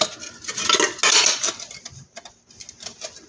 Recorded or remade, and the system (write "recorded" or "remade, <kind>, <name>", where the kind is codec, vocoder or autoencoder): recorded